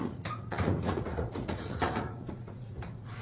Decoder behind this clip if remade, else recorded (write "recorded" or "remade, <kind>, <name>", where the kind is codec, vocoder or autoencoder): remade, vocoder, Vocos